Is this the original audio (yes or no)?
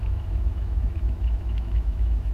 no